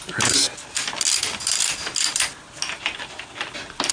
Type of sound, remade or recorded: recorded